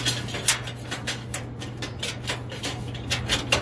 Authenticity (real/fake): real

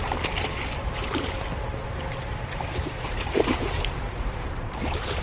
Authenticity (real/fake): fake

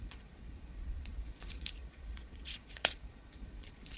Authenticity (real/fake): fake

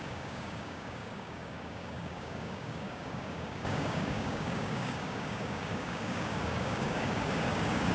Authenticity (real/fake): fake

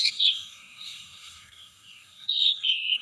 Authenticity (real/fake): fake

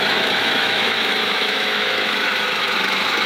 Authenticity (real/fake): fake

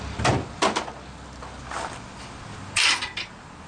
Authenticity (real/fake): real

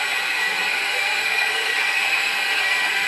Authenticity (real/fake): fake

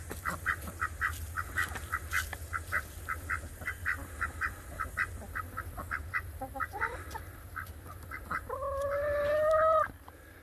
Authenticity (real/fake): real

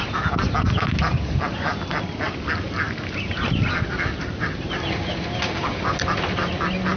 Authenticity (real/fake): real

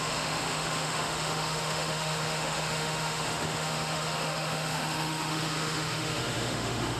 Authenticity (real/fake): fake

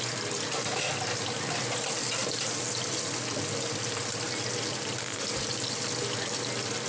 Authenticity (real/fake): real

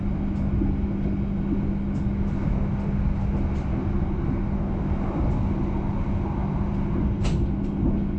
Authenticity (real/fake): real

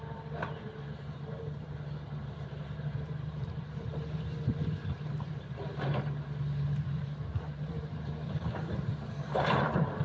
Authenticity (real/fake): fake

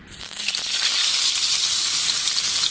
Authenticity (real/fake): real